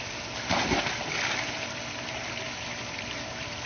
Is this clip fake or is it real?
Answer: real